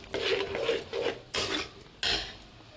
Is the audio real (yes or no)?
yes